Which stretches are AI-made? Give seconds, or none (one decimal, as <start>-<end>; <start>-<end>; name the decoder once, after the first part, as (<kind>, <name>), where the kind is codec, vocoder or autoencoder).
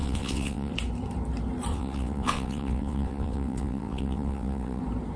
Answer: 0.0-0.7 (vocoder, WaveNeXt); 1.7-4.8